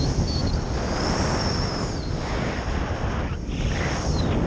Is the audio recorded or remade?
recorded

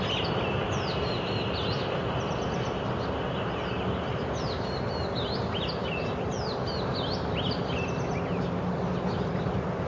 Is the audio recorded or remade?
recorded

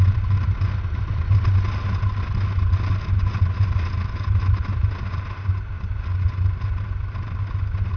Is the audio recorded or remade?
recorded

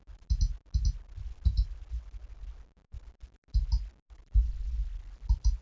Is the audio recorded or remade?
recorded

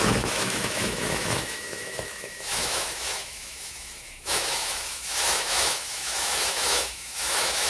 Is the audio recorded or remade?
remade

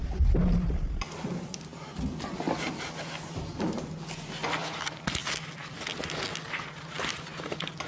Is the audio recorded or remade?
recorded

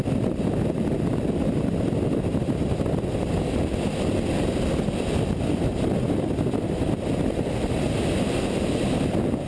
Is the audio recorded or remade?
recorded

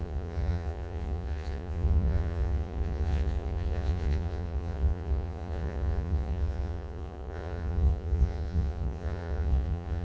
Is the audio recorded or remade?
remade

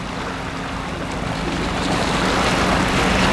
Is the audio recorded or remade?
recorded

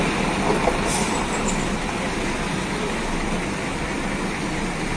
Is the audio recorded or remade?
recorded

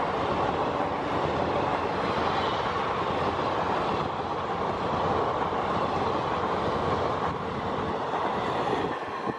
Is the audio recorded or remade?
recorded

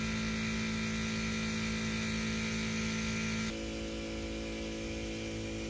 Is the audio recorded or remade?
recorded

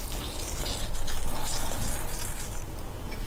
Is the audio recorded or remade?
recorded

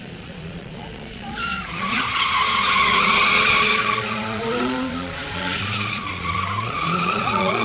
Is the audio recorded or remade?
remade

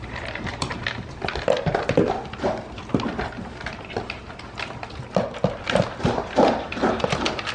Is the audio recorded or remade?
recorded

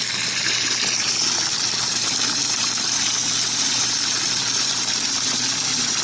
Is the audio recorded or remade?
recorded